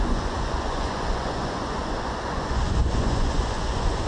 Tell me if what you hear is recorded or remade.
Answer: remade